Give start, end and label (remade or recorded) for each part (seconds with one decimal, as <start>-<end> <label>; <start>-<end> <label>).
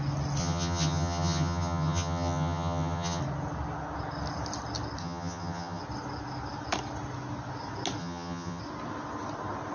0.0-0.4 recorded; 0.4-3.2 remade; 3.2-5.0 recorded; 5.0-5.8 remade; 5.8-8.0 recorded; 8.0-8.6 remade; 8.6-9.7 recorded